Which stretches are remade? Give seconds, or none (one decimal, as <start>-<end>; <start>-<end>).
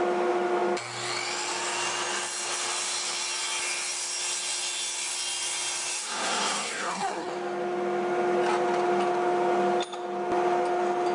6.0-7.3